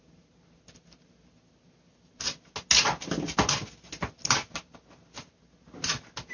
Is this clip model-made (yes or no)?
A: no